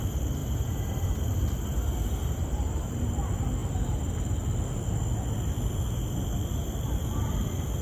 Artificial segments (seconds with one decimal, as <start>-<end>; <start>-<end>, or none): 0.4-1.3; 2.2-3.0